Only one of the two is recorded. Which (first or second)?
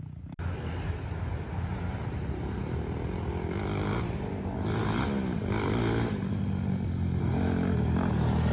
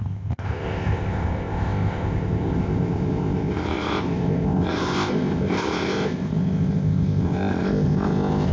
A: first